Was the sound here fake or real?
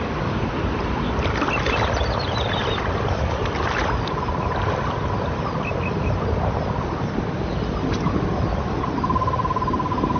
real